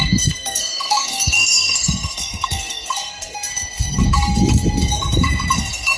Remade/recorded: remade